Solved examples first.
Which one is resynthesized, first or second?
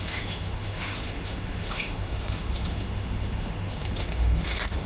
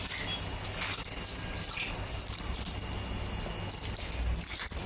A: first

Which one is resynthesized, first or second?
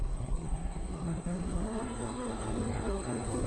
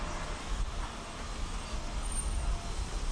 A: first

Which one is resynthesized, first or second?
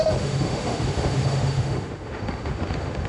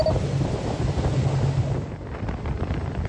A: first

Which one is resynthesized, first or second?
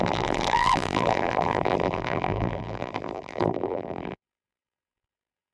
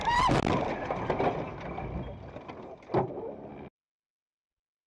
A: first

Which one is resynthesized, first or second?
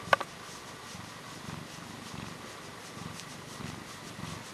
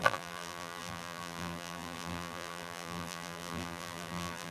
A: second